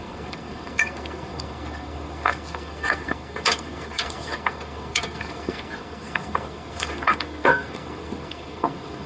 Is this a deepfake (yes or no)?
yes